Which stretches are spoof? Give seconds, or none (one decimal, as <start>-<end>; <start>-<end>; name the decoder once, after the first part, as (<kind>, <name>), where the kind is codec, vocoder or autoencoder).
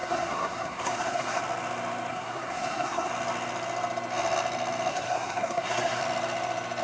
0.0-1.4 (codec, SNAC); 2.1-3.1; 4.9-6.0